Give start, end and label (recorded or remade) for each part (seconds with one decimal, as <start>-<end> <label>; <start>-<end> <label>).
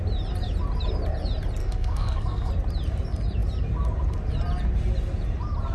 0.0-1.6 recorded; 1.6-2.5 remade; 2.5-5.7 recorded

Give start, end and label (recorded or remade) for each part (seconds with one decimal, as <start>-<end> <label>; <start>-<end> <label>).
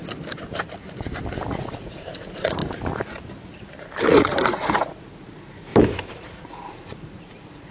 0.0-1.5 recorded; 1.5-2.6 remade; 2.6-4.0 recorded; 4.0-5.7 remade; 5.7-6.5 recorded; 6.5-7.7 remade